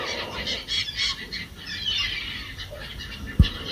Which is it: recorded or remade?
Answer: recorded